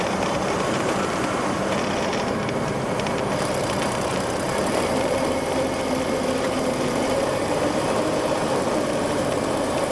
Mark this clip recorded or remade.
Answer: remade